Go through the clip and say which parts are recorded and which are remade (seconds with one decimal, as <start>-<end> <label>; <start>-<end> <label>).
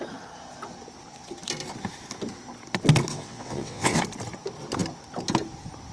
0.0-3.1 recorded; 3.1-4.0 remade; 4.0-5.9 recorded